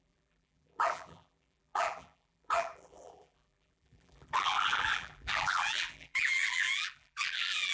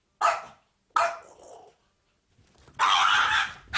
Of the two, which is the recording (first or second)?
second